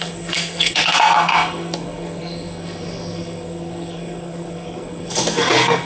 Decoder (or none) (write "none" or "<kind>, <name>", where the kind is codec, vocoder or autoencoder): codec, SNAC